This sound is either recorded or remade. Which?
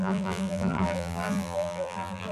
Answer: remade